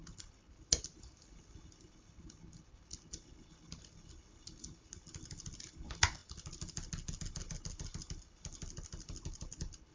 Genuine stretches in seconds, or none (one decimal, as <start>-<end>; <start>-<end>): 0.0-9.9